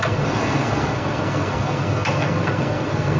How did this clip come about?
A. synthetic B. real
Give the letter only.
A